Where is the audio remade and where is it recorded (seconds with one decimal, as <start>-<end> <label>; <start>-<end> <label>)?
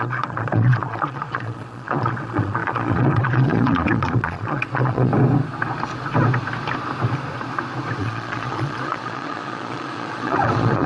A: 0.0-5.1 remade; 5.1-8.0 recorded; 8.0-10.9 remade